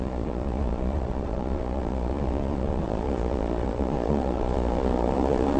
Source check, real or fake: fake